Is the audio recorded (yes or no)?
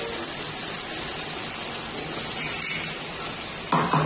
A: yes